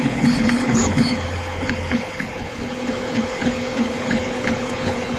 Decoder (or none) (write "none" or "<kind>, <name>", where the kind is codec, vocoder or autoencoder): codec, HILCodec